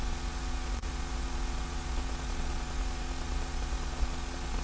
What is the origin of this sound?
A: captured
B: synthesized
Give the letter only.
B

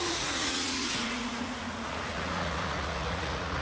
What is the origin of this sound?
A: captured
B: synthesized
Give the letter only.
B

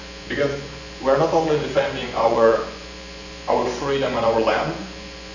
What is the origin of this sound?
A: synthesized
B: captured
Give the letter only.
A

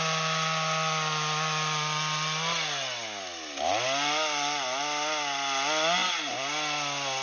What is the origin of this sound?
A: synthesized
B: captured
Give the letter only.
B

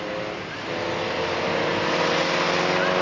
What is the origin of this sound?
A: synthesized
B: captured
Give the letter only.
B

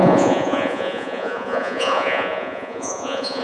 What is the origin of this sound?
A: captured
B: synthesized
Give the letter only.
B